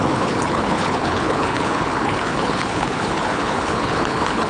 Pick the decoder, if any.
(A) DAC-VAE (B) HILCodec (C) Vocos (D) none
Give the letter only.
B